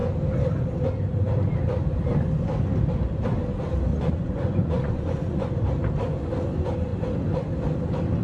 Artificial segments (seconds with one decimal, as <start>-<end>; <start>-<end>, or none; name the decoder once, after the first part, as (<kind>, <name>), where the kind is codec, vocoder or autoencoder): 3.9-5.5 (vocoder, Vocos)